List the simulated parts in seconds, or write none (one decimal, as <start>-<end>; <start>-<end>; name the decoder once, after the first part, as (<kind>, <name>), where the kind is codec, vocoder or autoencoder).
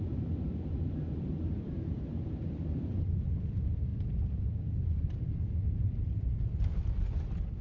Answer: 0.0-7.6 (vocoder, BigVGAN v2)